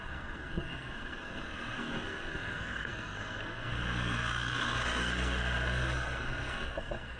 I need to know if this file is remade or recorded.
remade